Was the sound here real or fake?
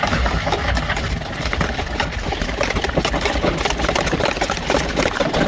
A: real